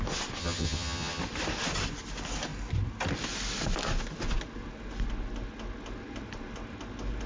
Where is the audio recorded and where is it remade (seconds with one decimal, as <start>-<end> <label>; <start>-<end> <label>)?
0.0-0.4 recorded; 0.4-1.2 remade; 1.2-7.3 recorded